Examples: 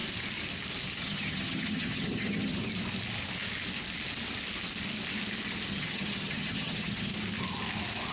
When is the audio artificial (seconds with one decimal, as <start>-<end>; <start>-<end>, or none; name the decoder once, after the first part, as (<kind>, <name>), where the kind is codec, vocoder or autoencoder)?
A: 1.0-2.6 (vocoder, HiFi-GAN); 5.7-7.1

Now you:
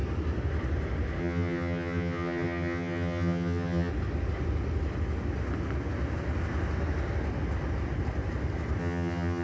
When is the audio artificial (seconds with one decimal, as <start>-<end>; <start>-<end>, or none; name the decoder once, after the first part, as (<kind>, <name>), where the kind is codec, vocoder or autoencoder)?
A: 1.2-3.9 (vocoder, HiFi-GAN); 8.8-9.4

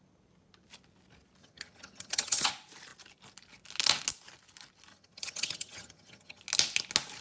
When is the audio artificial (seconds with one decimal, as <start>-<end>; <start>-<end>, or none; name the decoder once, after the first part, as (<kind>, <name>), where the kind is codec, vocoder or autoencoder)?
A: 1.4-2.5 (vocoder, HiFi-GAN); 4.9-6.4

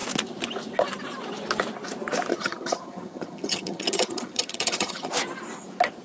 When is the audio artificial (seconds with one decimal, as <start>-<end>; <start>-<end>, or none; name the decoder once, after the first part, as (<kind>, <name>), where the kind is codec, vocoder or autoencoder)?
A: 2.3-5.1 (vocoder, HiFi-GAN)

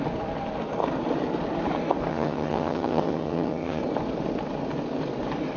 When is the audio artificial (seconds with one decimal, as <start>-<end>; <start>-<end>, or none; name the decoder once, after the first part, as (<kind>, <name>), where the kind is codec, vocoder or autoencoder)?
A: 2.1-3.8 (vocoder, HiFi-GAN)